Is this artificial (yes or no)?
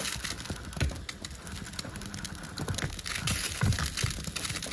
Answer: no